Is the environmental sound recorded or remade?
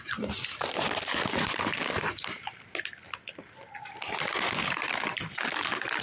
recorded